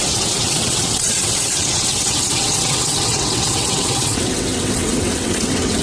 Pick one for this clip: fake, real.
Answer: fake